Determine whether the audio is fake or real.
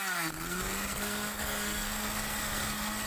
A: fake